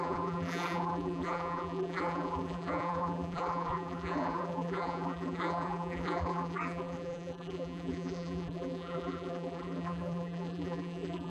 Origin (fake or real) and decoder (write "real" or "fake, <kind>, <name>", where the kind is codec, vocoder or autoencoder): fake, vocoder, BigVGAN v2